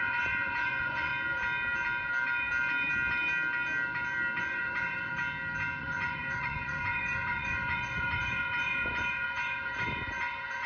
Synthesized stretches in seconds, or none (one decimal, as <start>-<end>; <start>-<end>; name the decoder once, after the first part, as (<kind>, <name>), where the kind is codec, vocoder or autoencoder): 0.0-1.1 (vocoder, Vocos); 4.4-5.1; 5.8-10.7